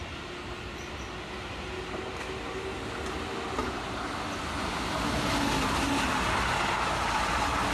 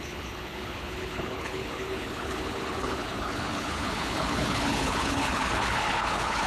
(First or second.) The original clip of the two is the first